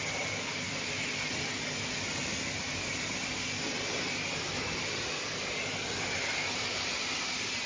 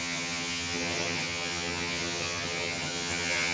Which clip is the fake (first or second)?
second